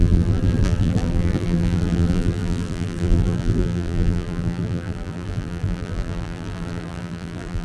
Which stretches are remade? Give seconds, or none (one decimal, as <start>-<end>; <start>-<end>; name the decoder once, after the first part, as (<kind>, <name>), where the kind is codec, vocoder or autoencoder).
0.0-7.6 (vocoder, BigVGAN v2)